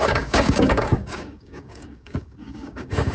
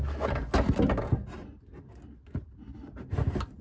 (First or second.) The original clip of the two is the second